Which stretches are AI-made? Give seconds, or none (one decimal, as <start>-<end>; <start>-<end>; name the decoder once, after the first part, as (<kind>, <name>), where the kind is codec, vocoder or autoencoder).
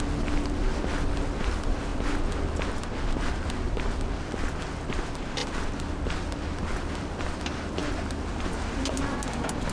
none